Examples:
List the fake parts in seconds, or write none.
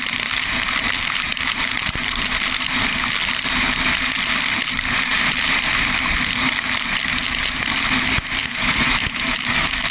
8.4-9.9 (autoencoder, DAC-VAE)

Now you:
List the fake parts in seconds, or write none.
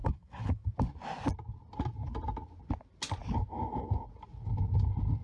0.0-0.7 (autoencoder, DAC-VAE)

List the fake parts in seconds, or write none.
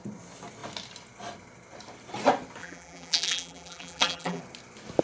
2.6-4.4 (vocoder, BigVGAN v2)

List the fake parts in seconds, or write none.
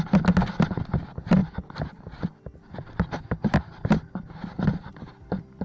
none